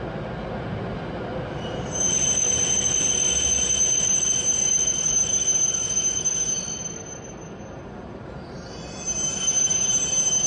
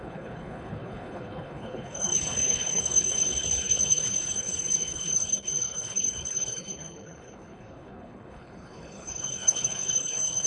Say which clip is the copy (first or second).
second